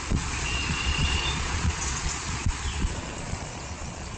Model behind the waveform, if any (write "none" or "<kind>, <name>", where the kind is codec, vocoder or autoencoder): vocoder, Vocos